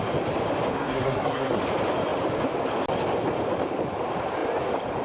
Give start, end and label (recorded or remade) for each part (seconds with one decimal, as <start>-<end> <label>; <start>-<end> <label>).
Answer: 0.0-0.7 recorded; 0.7-1.6 remade; 1.6-5.0 recorded